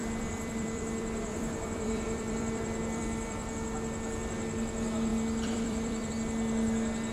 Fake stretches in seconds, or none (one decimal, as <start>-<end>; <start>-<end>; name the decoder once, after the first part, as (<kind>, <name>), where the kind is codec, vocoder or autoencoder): 0.0-3.5 (vocoder, BigVGAN v2); 5.1-6.1